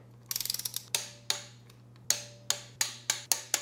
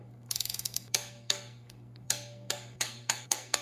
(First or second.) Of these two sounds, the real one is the first